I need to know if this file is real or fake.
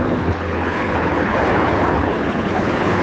fake